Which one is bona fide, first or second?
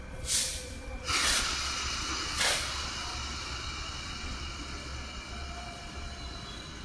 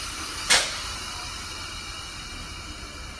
second